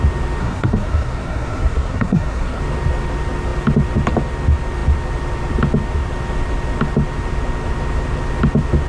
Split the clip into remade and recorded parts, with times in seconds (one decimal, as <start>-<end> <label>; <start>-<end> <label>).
0.0-0.4 recorded; 0.4-2.6 remade; 2.6-8.9 recorded